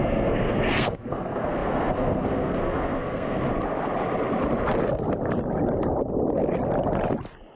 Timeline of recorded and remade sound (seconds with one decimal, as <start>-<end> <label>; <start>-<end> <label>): 0.0-3.4 remade; 3.4-7.6 recorded